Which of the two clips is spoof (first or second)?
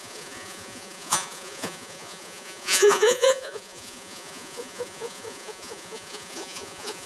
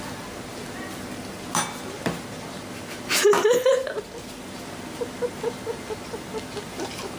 first